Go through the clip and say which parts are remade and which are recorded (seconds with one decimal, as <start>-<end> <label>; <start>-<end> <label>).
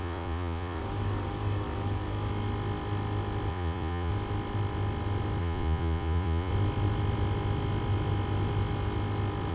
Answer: 0.0-0.8 remade; 0.8-3.5 recorded; 3.5-4.1 remade; 4.1-5.4 recorded; 5.4-6.5 remade; 6.5-9.5 recorded